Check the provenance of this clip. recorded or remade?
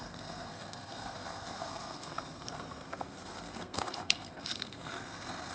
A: remade